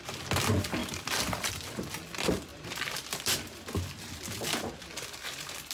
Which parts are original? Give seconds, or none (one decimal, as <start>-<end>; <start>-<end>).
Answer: 0.0-0.8; 1.5-2.5; 3.3-5.7